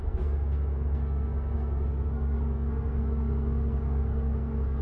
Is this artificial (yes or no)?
yes